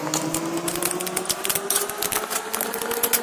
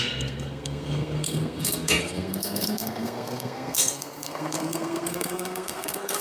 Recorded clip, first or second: first